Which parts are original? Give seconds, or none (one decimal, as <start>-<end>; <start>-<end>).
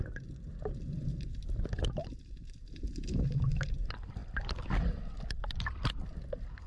0.0-6.7